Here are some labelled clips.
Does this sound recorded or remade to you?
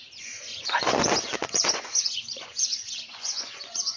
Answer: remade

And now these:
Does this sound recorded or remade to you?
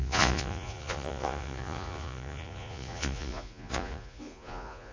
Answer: remade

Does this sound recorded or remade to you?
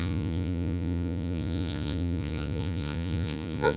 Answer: remade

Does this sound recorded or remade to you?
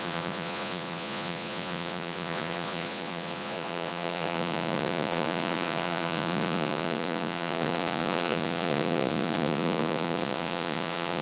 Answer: remade